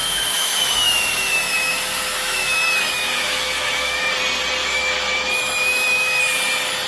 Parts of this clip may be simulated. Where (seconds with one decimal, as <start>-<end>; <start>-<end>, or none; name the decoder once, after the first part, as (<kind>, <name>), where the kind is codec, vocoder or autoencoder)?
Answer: 0.0-4.1 (autoencoder, DAC-VAE); 4.6-6.2

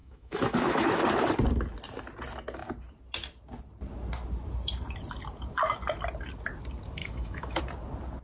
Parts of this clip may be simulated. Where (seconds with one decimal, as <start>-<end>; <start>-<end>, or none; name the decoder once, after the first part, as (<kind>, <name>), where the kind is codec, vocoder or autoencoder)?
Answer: 0.0-1.0 (autoencoder, DAC-VAE); 7.0-7.6

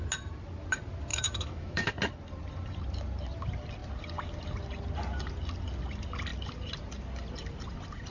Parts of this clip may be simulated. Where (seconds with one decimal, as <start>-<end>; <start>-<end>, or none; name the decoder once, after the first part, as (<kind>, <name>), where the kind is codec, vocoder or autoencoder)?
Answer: 1.1-1.9 (autoencoder, DAC-VAE)

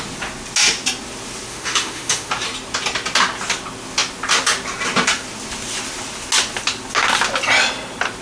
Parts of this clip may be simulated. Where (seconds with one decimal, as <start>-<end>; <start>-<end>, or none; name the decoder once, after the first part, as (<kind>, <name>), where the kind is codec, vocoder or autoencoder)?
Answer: 1.5-2.3 (autoencoder, DAC-VAE)